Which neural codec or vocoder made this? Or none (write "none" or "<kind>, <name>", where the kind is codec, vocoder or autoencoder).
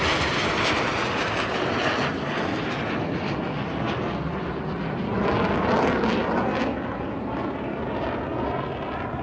none